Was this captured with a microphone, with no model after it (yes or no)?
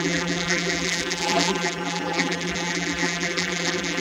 no